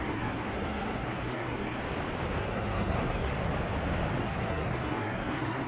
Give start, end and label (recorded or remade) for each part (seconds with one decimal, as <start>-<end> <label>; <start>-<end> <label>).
0.0-1.8 remade; 1.8-2.4 recorded; 2.4-3.3 remade; 3.3-4.2 recorded; 4.2-5.7 remade